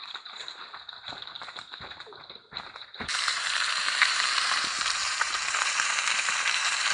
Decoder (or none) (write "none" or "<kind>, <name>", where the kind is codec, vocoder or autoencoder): vocoder, BigVGAN v2